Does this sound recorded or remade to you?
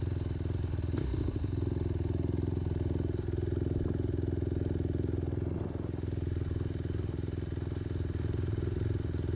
recorded